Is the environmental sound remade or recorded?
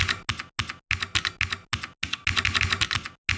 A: recorded